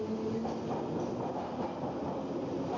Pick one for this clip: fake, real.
real